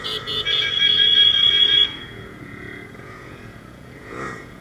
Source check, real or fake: fake